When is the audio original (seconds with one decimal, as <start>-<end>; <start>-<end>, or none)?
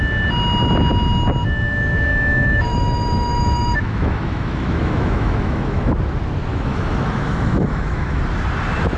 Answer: 0.0-2.1; 5.9-6.5; 8.2-9.0